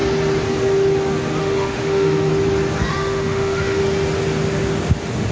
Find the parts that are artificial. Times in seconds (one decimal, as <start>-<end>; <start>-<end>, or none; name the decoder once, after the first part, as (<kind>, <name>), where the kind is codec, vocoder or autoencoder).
1.4-2.3 (autoencoder, DAC-VAE); 2.9-3.8